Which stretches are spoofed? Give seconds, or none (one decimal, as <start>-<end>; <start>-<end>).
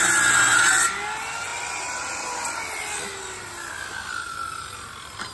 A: none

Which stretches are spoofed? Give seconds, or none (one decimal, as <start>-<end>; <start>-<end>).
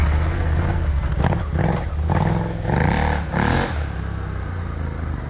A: 0.0-1.1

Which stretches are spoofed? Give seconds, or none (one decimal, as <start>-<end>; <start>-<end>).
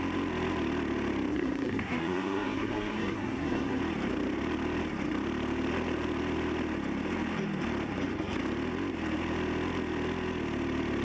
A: 1.3-3.8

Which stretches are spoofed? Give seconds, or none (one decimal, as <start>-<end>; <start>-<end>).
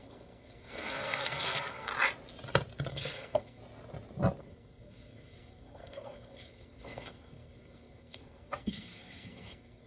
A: 0.0-1.9; 2.9-3.6; 4.4-9.9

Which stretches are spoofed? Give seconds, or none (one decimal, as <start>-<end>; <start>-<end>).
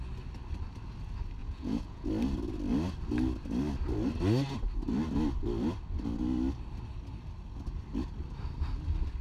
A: 1.4-2.1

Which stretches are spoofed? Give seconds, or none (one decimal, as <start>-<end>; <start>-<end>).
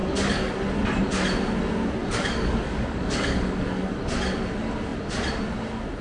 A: 0.0-0.5; 2.0-3.9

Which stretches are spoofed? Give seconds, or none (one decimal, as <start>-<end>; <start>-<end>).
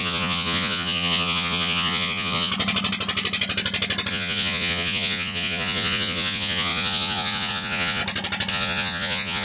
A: 0.0-2.5; 4.1-8.0; 8.5-9.4